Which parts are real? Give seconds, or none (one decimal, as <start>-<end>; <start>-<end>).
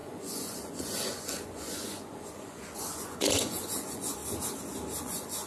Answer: 4.2-5.0